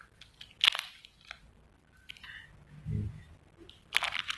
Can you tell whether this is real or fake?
real